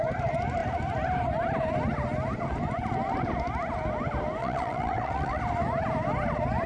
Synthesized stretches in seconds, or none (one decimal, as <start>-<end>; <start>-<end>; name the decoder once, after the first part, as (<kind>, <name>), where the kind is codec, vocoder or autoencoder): 4.4-5.4 (vocoder, WaveNeXt)